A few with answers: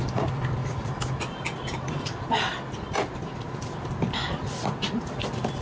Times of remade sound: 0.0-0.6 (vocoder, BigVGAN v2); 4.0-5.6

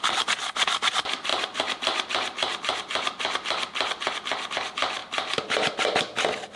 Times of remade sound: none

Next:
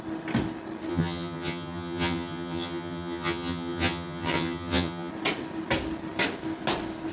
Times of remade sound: 0.9-5.1 (vocoder, HiFi-GAN)

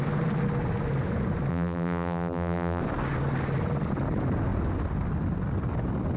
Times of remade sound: 1.5-2.8 (vocoder, BigVGAN v2)

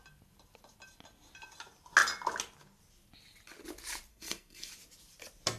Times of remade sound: 4.1-4.7 (codec, SNAC)

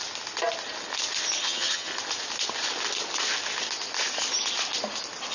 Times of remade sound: 1.4-1.9 (vocoder, HiFi-GAN)